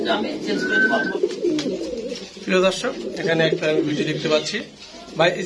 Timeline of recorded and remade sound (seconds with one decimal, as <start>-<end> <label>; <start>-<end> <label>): 0.0-2.9 recorded; 2.9-3.9 remade; 3.9-5.5 recorded